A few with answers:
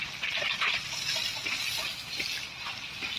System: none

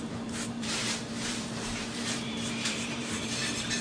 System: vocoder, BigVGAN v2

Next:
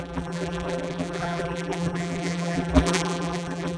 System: vocoder, BigVGAN v2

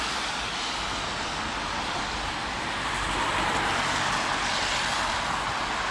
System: none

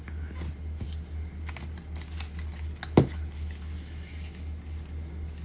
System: none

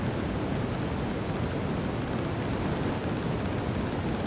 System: none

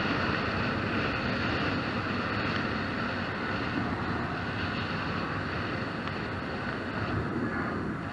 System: none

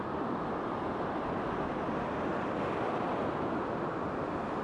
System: none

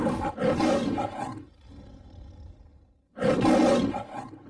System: none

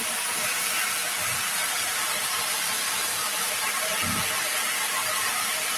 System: vocoder, BigVGAN v2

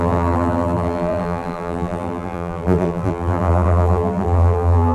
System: vocoder, BigVGAN v2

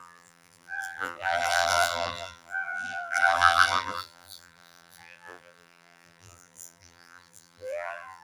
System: vocoder, BigVGAN v2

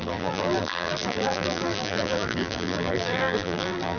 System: vocoder, BigVGAN v2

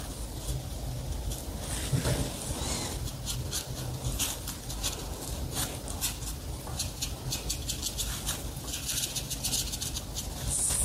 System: none